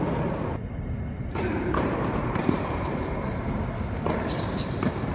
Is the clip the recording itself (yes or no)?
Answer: no